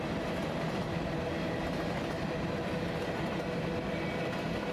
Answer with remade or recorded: recorded